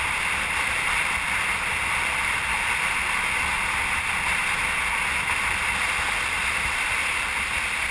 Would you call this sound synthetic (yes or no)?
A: no